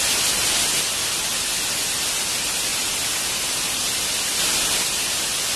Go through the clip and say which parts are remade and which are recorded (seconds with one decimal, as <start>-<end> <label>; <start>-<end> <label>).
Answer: 0.0-2.7 recorded; 2.7-5.6 remade